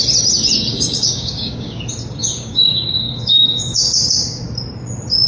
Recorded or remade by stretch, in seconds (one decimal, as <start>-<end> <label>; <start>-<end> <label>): 0.0-0.7 recorded; 0.7-1.8 remade; 1.8-2.2 recorded; 2.2-4.4 remade; 4.4-5.3 recorded